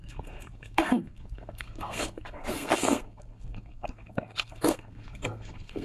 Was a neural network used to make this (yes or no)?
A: yes